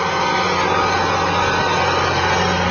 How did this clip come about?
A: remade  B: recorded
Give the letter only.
B